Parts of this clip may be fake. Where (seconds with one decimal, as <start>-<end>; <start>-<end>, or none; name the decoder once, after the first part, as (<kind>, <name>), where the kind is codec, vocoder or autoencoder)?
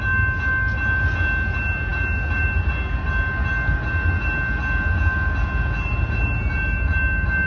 none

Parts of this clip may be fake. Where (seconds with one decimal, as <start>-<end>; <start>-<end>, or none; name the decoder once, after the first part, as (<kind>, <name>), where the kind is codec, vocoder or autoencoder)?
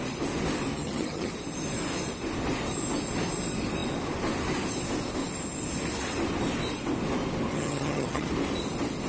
0.7-1.3 (vocoder, HiFi-GAN); 7.5-8.3